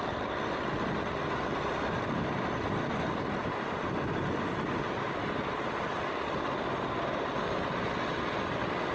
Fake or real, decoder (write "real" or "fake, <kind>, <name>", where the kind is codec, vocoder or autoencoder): real